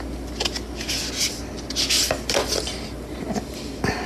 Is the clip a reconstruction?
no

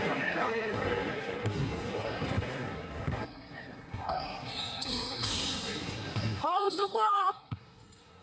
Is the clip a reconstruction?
yes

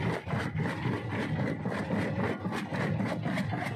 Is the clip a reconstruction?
no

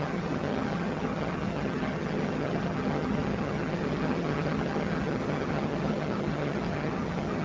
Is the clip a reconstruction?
yes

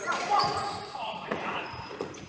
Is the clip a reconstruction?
yes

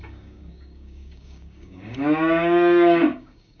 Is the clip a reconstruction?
yes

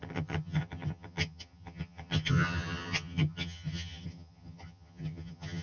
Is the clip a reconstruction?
yes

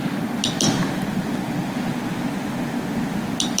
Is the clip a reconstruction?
no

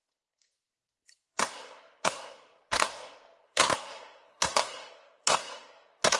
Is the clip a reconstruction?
yes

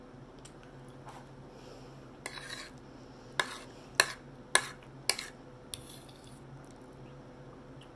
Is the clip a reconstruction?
no